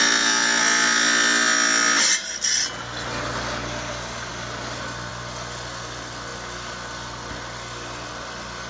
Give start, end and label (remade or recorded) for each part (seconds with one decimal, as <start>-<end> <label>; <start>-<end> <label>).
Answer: 0.0-8.7 recorded